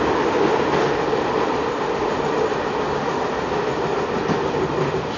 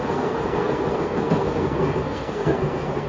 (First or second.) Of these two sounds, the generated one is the second